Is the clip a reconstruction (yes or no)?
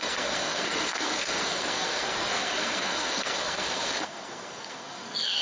yes